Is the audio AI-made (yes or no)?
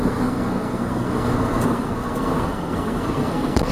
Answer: yes